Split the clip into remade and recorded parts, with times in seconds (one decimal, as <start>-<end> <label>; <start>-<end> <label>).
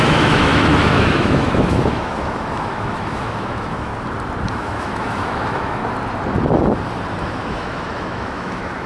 0.0-3.9 remade; 3.9-4.5 recorded; 4.5-5.8 remade; 5.8-7.2 recorded; 7.2-8.9 remade